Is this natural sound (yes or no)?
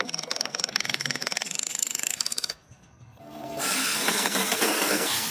no